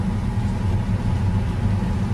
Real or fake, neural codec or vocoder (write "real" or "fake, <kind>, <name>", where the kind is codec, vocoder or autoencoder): real